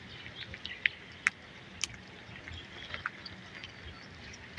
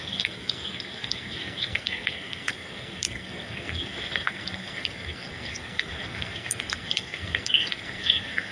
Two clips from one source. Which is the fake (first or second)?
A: second